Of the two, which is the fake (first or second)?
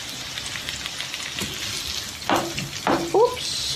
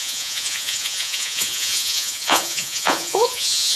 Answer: second